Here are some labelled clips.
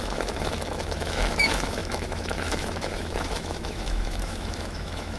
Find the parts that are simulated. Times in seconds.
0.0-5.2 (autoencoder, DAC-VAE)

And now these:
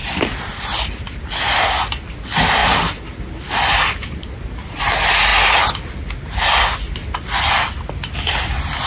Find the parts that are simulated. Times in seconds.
none

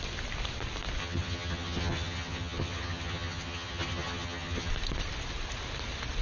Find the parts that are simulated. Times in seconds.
1.0-4.7 (vocoder, HiFi-GAN)

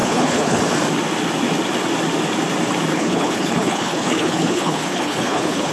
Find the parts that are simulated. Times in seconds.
0.0-0.6 (codec, HILCodec); 2.9-5.7

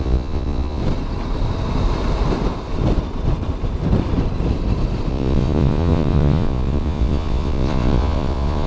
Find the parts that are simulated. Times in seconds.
0.0-0.8 (vocoder, Vocos); 5.1-8.7

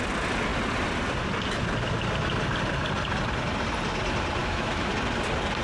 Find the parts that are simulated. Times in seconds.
4.4-4.9 (autoencoder, DAC-VAE)

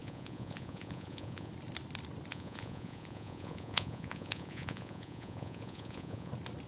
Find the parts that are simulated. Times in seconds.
0.0-1.5 (vocoder, Vocos); 2.3-6.3